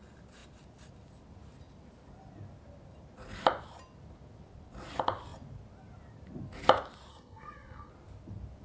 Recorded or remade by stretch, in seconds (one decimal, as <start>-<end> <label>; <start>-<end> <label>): 0.0-7.1 recorded; 7.1-7.9 remade; 7.9-8.6 recorded